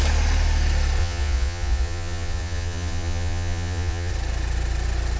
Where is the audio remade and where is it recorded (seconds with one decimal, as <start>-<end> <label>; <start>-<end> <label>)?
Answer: 0.0-1.0 recorded; 1.0-4.1 remade; 4.1-5.2 recorded